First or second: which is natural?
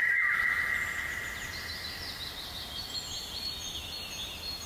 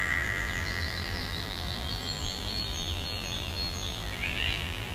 first